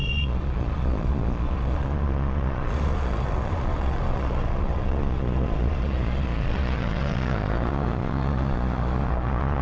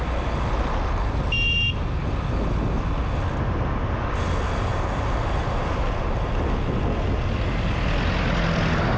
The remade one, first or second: first